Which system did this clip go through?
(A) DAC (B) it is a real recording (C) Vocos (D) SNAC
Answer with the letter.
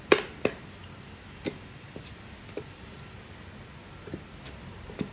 B